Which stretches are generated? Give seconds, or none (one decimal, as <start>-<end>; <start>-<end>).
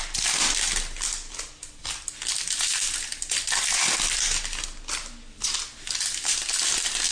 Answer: none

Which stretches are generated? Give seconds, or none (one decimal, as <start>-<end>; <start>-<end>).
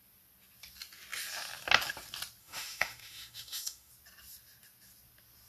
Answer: 2.4-3.9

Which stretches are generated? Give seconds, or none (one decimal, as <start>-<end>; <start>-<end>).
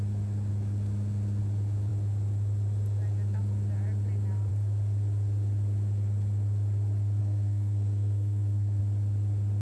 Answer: 7.2-8.8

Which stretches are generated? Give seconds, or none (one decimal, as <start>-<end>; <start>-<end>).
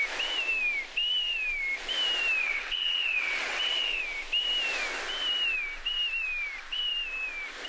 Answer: 2.4-4.0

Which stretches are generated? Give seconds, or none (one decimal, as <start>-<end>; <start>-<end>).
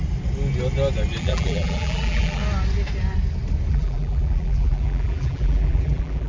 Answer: 1.2-2.4; 3.7-6.3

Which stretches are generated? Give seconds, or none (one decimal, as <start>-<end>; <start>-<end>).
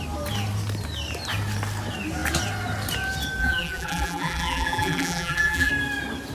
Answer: 3.4-5.7